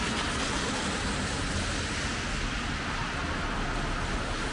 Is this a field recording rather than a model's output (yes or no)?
yes